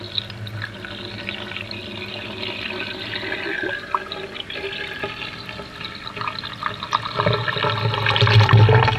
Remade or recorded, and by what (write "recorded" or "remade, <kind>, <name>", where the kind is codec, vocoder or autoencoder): recorded